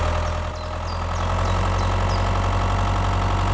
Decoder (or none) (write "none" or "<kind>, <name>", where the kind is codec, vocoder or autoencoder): none